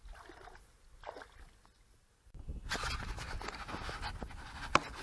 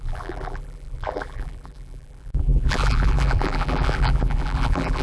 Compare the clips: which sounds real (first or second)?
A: first